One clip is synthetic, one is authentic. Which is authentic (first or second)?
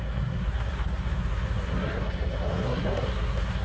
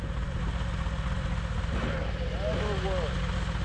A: second